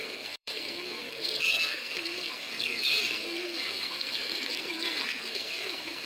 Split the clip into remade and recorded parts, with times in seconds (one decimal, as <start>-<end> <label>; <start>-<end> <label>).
0.0-6.1 remade